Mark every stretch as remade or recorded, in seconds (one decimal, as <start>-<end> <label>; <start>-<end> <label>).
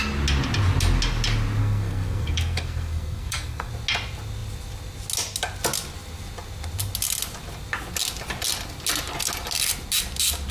0.0-1.6 recorded; 1.6-3.7 remade; 3.7-10.5 recorded